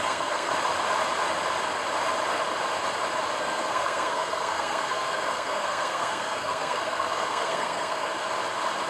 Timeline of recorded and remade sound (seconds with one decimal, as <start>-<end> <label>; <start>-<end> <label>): 0.0-0.5 remade; 0.5-3.4 recorded; 3.4-8.1 remade; 8.1-8.9 recorded

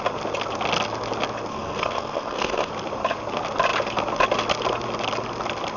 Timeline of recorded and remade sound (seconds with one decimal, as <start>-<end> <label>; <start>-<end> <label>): 0.0-1.5 recorded; 1.5-2.7 remade; 2.7-5.8 recorded

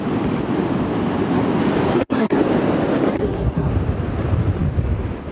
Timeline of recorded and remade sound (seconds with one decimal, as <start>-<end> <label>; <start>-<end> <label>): 0.0-1.9 recorded; 1.9-2.4 remade; 2.4-3.0 recorded; 3.0-3.7 remade; 3.7-5.3 recorded

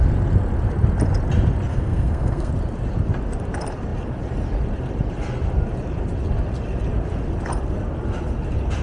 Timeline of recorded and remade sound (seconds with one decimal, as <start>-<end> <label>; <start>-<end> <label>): 0.0-1.7 recorded; 1.7-2.5 remade; 2.5-8.8 recorded

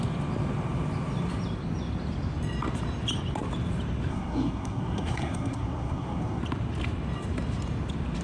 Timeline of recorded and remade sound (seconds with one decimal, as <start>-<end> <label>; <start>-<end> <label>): 0.0-4.1 recorded; 4.1-6.4 remade; 6.4-8.2 recorded

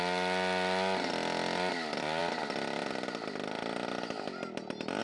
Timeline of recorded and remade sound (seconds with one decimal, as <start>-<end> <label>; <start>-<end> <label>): 0.0-5.0 recorded

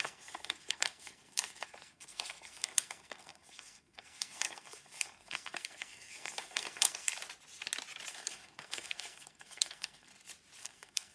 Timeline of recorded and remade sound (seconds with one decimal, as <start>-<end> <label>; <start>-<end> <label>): 0.0-7.1 remade; 7.1-8.1 recorded; 8.1-10.1 remade; 10.1-10.6 recorded; 10.6-11.1 remade